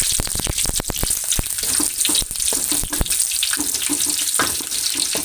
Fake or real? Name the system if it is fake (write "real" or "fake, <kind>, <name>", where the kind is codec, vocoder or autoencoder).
real